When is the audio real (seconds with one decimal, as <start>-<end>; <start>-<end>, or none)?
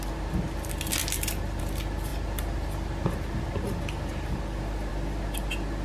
0.0-5.8